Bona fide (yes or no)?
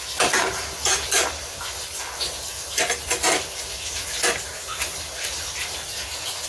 yes